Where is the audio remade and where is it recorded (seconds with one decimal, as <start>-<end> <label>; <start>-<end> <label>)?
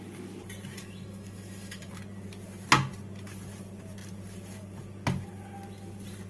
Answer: 0.0-0.8 recorded; 0.8-1.9 remade; 1.9-6.3 recorded